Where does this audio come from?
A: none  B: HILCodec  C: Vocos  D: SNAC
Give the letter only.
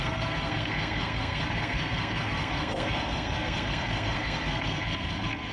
D